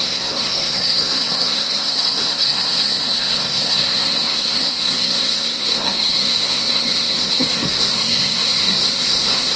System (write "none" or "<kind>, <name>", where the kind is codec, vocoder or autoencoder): codec, SNAC